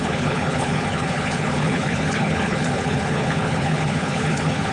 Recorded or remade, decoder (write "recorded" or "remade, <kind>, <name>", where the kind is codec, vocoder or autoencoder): remade, codec, HILCodec